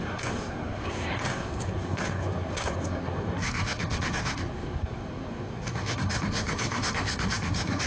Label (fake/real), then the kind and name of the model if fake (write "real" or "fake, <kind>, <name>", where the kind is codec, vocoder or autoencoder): fake, codec, SNAC